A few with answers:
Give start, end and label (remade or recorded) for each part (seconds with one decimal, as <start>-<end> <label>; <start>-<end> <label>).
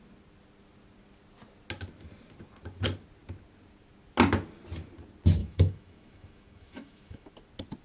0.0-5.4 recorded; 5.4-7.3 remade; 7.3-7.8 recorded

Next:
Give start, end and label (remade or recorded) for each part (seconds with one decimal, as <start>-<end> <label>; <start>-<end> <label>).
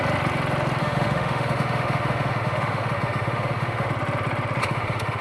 0.0-0.8 recorded; 0.8-3.9 remade; 3.9-4.6 recorded; 4.6-5.2 remade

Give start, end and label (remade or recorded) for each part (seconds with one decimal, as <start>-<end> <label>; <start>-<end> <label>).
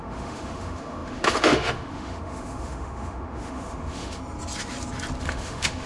0.0-4.2 remade; 4.2-5.2 recorded; 5.2-5.9 remade